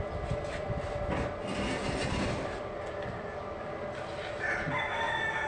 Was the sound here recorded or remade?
recorded